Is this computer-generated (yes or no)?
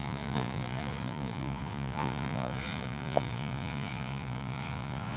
yes